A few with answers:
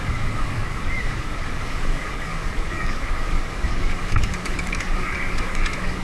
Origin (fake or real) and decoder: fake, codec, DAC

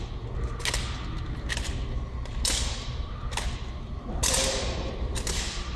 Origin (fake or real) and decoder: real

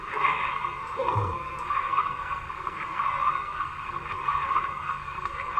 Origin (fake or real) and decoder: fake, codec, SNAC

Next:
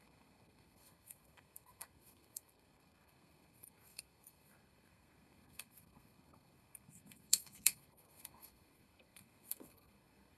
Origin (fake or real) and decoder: fake, codec, SNAC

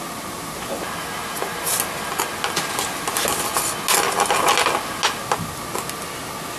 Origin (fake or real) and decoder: real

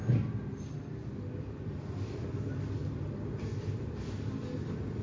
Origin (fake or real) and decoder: fake, vocoder, BigVGAN v2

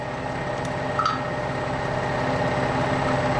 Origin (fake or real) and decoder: real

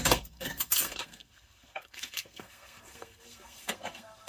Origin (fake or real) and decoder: fake, codec, SNAC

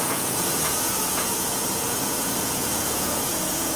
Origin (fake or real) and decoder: fake, vocoder, Vocos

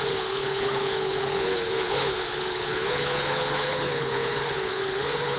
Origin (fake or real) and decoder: fake, codec, HILCodec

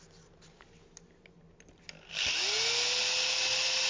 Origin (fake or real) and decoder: real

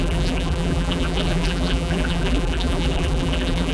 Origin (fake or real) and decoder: fake, vocoder, BigVGAN v2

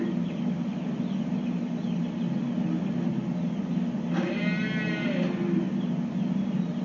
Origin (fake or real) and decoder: real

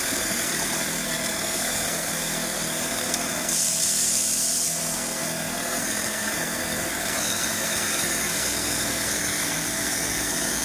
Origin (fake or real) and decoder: fake, codec, SNAC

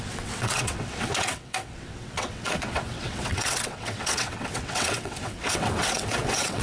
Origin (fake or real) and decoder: fake, vocoder, WaveNeXt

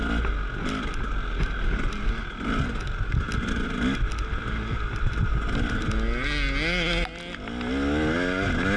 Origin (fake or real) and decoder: real